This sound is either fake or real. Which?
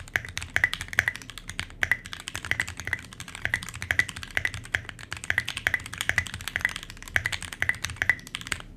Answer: real